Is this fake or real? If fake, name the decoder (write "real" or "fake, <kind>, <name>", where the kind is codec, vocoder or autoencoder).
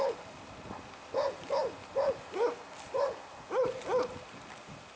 real